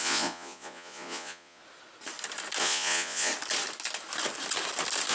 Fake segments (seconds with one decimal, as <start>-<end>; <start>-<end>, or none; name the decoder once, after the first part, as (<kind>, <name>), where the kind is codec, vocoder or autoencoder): 0.0-1.6 (vocoder, Vocos); 2.6-3.3